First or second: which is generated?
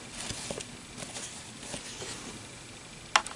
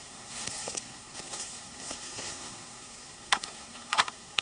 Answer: second